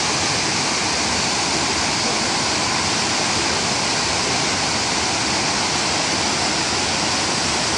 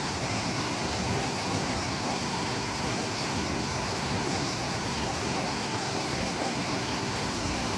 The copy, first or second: second